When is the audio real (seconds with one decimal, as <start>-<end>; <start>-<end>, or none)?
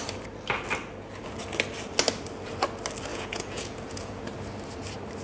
0.0-3.1; 4.2-5.2